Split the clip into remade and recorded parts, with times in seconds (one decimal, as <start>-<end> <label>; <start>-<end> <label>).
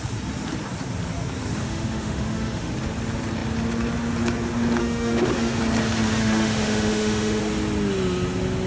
0.0-1.6 recorded; 1.6-2.7 remade; 2.7-4.8 recorded; 4.8-5.6 remade; 5.6-6.2 recorded; 6.2-7.4 remade; 7.4-8.7 recorded